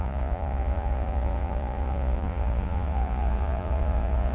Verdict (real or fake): fake